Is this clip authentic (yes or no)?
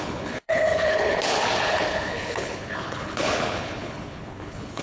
no